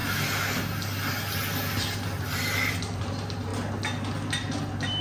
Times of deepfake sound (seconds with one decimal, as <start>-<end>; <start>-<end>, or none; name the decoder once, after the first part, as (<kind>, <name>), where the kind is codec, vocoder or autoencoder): none